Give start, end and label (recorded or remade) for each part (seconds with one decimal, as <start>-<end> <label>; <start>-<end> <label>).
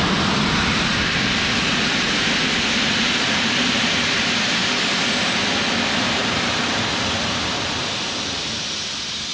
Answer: 0.0-6.2 remade; 6.2-6.7 recorded; 6.7-9.3 remade